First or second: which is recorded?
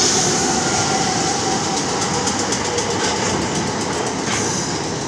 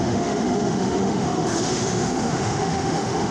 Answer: first